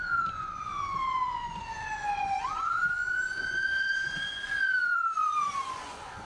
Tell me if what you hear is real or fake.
fake